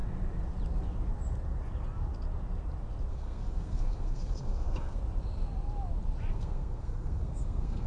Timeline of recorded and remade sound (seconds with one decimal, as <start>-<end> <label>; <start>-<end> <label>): 0.0-3.1 recorded; 3.1-5.0 remade; 5.0-6.3 recorded; 6.3-7.9 remade